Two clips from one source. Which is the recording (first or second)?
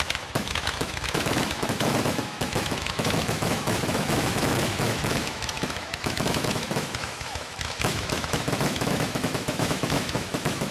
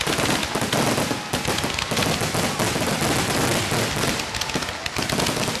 second